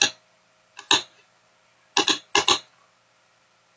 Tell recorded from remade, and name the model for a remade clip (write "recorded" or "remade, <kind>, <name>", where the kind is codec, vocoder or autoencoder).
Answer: recorded